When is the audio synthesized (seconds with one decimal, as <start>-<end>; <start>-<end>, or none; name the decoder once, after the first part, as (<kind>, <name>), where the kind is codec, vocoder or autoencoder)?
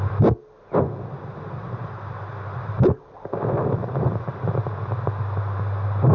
1.6-4.3 (vocoder, BigVGAN v2)